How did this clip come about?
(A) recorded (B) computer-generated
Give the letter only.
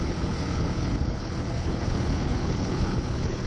B